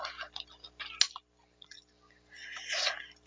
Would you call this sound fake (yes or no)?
no